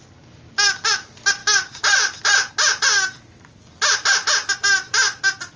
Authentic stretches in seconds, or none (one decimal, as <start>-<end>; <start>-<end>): 0.0-5.6

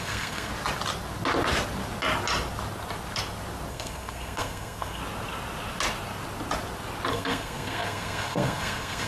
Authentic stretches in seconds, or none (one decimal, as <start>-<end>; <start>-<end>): 0.5-3.7; 5.0-7.1

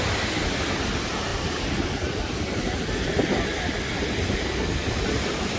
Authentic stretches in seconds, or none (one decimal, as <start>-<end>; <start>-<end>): 0.0-5.6

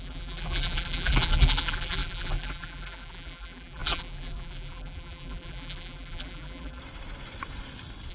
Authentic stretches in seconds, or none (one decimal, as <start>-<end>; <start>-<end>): 6.8-8.1

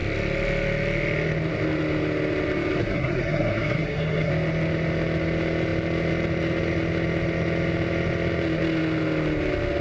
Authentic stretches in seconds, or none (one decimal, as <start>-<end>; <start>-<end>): 0.0-2.8; 4.3-9.8

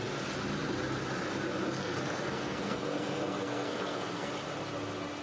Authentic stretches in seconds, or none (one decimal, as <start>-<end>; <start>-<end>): 0.0-1.8; 4.3-5.2

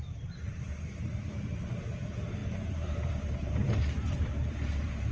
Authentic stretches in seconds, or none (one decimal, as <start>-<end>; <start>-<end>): none

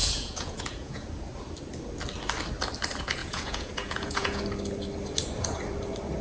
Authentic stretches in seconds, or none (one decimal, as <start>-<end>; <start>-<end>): 1.1-3.2; 4.4-6.2